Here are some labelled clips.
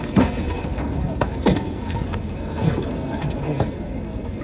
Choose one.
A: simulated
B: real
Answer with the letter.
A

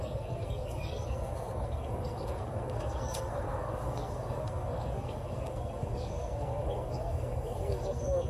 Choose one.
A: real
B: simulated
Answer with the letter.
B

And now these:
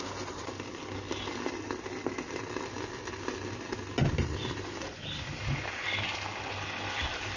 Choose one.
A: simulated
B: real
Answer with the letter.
B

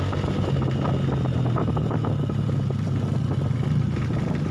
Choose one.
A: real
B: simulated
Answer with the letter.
A